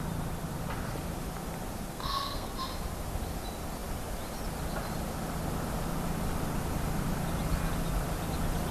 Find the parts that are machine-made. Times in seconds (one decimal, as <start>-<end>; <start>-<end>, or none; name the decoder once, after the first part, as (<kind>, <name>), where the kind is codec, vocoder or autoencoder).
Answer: 1.9-2.5 (codec, SNAC)

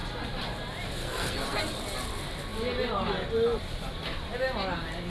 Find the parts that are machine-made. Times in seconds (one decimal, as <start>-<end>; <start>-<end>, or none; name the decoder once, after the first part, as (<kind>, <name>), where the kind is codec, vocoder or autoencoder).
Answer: 1.0-1.6 (codec, SNAC)

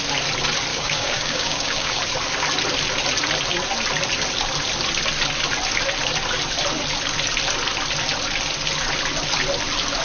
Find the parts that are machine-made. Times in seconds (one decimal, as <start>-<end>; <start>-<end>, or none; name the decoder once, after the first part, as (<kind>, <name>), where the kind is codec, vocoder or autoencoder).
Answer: 0.7-2.0 (codec, DAC)